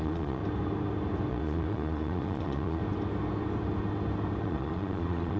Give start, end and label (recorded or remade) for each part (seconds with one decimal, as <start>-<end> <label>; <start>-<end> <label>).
0.0-0.4 remade; 0.4-1.3 recorded; 1.3-2.8 remade; 2.8-4.4 recorded; 4.4-5.4 remade